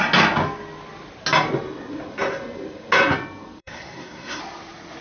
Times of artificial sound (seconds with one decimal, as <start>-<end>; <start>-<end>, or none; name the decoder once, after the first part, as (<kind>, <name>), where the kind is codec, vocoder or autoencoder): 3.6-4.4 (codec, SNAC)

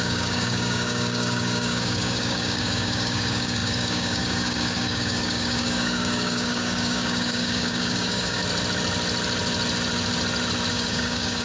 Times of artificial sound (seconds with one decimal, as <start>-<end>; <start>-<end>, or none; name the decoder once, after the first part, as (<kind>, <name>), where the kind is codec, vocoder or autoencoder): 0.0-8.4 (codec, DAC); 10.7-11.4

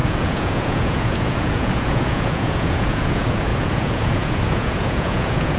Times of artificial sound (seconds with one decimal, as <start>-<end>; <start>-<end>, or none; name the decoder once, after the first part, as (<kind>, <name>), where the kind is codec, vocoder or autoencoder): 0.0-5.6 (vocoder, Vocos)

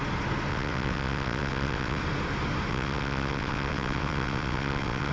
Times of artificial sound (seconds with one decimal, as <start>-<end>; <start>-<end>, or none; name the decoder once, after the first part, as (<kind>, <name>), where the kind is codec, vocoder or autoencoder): 0.5-2.0 (vocoder, WaveNeXt); 2.7-5.1

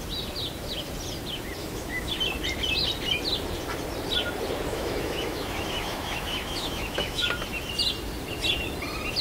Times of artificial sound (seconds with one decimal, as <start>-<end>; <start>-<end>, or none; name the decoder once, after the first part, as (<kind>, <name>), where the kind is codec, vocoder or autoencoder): 1.6-2.1 (autoencoder, DAC-VAE); 4.7-7.3

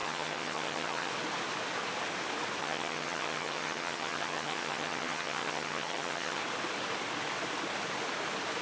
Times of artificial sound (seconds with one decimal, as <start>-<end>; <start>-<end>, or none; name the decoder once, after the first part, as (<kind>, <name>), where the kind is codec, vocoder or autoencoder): 0.0-1.1 (vocoder, HiFi-GAN); 2.6-6.4